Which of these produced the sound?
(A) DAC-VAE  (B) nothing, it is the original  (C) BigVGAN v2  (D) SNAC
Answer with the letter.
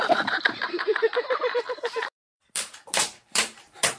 C